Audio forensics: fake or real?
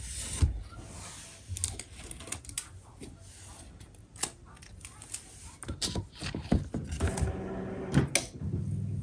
real